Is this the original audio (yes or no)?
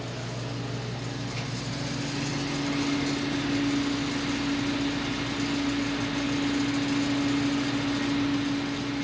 yes